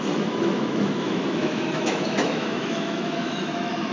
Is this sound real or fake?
fake